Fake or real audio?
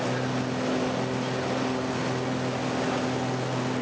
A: real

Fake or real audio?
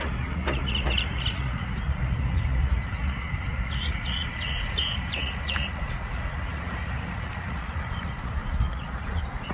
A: fake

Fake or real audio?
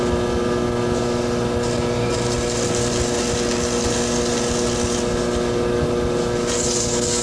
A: real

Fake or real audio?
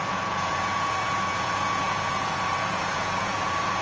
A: fake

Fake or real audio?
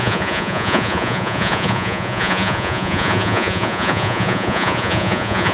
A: fake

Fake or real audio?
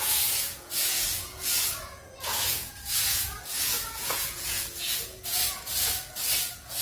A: fake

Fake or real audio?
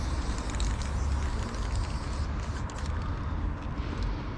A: real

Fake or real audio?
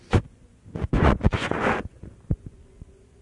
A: fake